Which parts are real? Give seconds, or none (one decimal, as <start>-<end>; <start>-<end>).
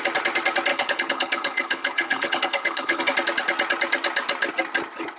0.0-0.7; 3.0-5.2